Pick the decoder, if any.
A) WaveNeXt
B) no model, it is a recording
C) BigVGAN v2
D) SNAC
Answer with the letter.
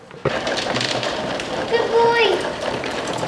C